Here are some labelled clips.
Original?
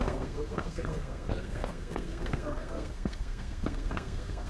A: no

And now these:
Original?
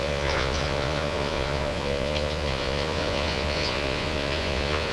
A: no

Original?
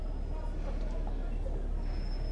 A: yes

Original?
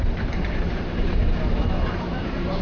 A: no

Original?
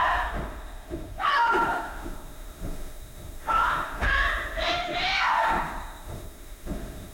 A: no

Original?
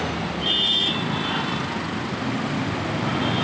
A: yes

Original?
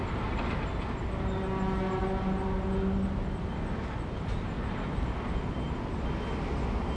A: yes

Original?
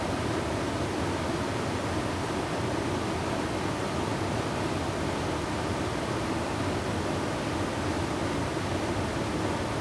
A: yes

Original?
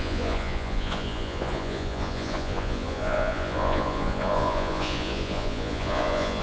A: no